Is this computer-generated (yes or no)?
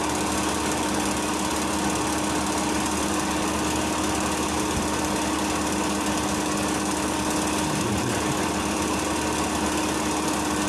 no